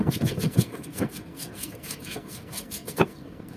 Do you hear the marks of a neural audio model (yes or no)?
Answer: yes